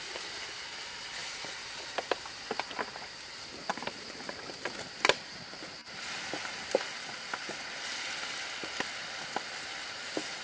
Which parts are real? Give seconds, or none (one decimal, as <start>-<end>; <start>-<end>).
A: 0.0-10.4